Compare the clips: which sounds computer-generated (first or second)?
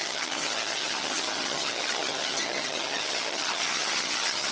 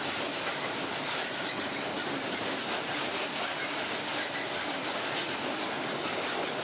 first